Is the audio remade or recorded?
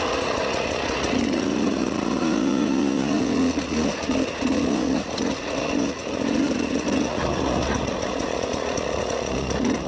remade